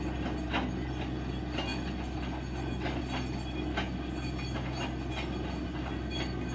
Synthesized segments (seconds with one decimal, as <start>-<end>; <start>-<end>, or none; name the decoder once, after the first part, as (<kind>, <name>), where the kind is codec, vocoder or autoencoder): none